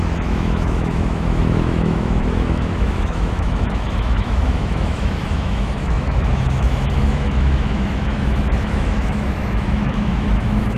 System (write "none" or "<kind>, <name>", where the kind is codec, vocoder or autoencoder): autoencoder, DAC-VAE